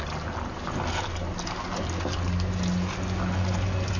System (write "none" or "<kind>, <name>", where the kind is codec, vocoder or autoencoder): none